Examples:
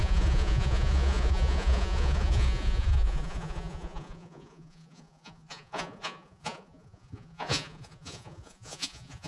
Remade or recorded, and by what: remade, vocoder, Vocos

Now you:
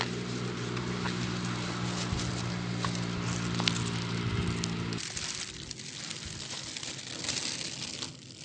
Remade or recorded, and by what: recorded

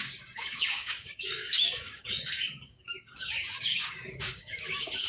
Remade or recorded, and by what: remade, codec, DAC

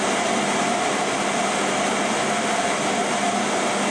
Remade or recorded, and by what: recorded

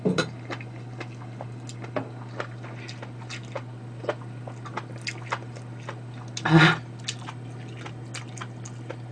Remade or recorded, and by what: recorded